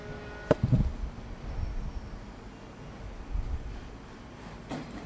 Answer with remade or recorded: recorded